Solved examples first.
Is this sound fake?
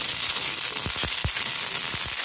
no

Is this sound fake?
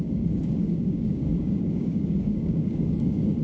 yes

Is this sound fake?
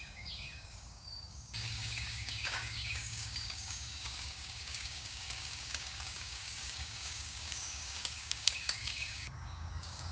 yes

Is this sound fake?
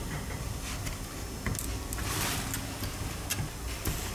no